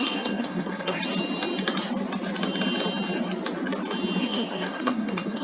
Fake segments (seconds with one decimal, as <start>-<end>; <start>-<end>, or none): 0.0-1.0; 4.2-5.4